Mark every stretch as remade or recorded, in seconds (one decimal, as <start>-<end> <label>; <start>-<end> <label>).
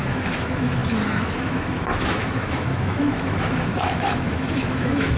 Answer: 0.0-5.2 remade